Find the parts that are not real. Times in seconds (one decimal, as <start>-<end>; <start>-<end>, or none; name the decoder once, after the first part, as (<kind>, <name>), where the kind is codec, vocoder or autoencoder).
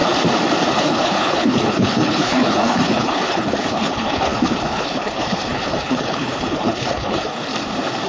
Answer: 0.8-7.5 (codec, HILCodec)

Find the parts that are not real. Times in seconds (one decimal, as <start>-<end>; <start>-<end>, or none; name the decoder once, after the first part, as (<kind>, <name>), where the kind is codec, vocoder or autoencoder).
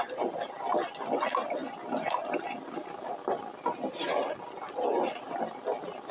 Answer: none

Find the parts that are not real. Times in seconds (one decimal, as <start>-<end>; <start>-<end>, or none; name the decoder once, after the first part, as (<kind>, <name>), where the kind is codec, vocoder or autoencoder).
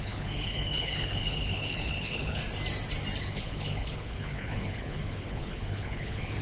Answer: 0.0-2.4 (codec, HILCodec); 3.2-6.4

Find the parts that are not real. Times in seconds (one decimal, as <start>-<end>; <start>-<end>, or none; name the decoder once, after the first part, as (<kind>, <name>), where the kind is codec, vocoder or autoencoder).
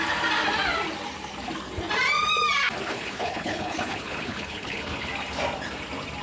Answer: 2.9-5.1 (codec, HILCodec)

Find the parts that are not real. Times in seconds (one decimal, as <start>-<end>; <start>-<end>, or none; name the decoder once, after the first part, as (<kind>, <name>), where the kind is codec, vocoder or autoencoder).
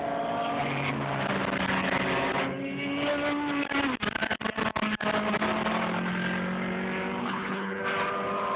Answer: 7.2-7.8 (codec, HILCodec)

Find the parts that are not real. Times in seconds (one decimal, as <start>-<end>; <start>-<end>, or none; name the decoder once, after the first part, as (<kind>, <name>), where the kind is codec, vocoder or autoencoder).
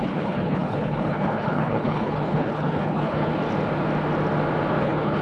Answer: 0.0-3.3 (codec, HILCodec); 4.8-5.2